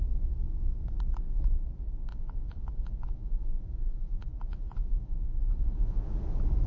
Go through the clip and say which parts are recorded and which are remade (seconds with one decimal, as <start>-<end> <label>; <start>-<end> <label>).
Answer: 0.0-2.1 recorded; 2.1-6.1 remade; 6.1-6.7 recorded